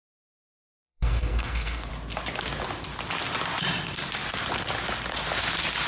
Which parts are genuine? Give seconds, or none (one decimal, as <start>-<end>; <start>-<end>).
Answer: 0.0-0.8; 1.9-5.9